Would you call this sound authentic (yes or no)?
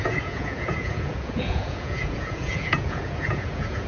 no